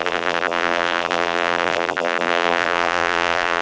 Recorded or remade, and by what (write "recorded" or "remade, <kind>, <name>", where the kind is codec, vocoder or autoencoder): remade, vocoder, BigVGAN v2